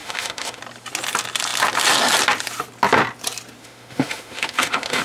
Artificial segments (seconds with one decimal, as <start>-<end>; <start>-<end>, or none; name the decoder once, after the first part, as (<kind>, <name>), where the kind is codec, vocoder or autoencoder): 0.0-0.6 (autoencoder, DAC-VAE); 3.6-5.0